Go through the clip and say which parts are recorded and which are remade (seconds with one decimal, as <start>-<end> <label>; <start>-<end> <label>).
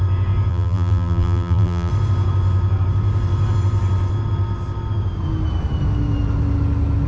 0.0-0.5 recorded; 0.5-1.9 remade; 1.9-7.1 recorded